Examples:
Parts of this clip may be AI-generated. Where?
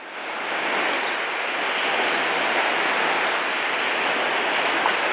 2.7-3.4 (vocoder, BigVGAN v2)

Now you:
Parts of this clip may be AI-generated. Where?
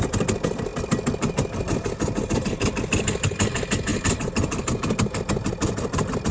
none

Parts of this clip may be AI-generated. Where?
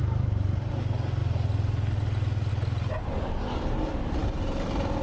0.0-0.7 (vocoder, BigVGAN v2)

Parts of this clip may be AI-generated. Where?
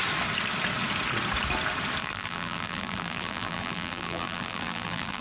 2.0-5.2 (vocoder, BigVGAN v2)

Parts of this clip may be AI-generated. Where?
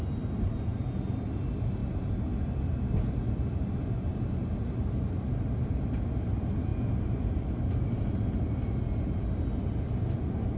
1.8-5.5 (vocoder, BigVGAN v2)